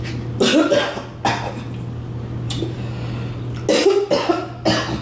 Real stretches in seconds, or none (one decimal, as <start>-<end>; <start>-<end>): 0.0-5.0